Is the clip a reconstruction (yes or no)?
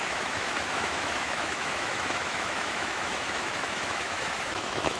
yes